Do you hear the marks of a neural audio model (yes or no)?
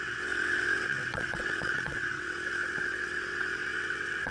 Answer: yes